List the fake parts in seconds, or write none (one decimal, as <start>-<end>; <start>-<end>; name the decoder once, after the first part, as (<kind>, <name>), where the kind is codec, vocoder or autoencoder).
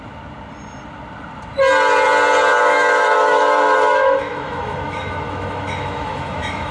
2.5-6.7 (autoencoder, DAC-VAE)